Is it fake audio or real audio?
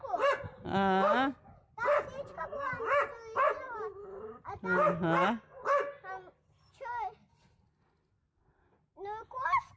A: real